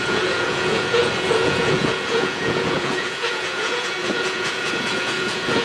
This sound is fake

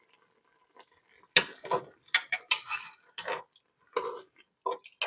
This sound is real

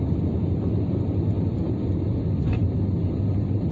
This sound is real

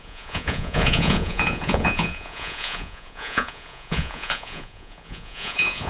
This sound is fake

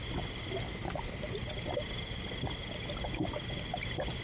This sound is real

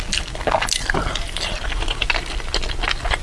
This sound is real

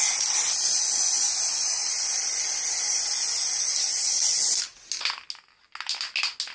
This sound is real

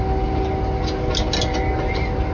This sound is real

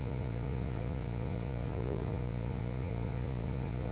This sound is fake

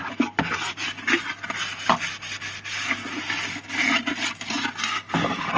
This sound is real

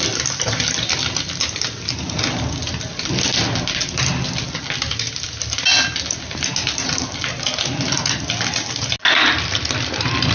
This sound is real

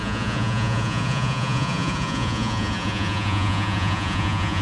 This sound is fake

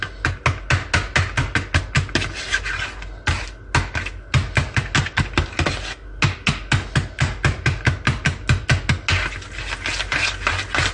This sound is real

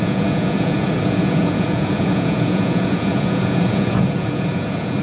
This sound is fake